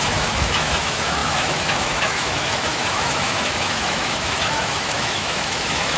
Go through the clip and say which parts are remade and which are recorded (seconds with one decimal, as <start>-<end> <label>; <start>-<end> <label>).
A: 0.0-6.0 remade